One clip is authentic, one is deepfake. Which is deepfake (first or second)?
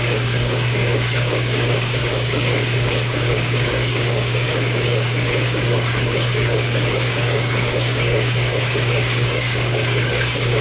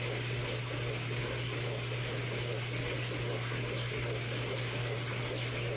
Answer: first